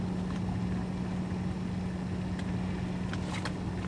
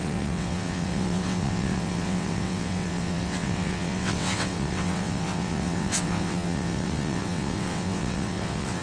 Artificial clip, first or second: second